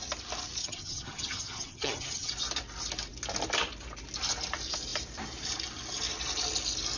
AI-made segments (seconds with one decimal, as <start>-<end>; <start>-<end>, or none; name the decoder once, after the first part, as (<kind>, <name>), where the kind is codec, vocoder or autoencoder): 0.6-2.3 (vocoder, HiFi-GAN)